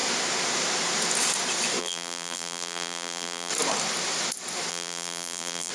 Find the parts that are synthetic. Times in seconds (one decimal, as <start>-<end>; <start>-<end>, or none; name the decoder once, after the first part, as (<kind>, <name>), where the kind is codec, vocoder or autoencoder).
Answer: 1.8-3.5 (vocoder, BigVGAN v2); 4.7-5.7